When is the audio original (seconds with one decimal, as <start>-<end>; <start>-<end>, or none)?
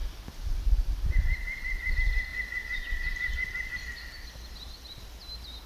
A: 1.9-2.3; 4.1-5.7